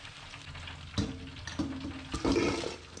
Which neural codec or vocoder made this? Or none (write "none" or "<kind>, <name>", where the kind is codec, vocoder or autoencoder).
none